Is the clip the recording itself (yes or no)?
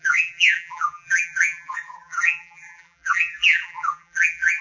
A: no